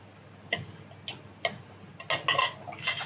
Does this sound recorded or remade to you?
recorded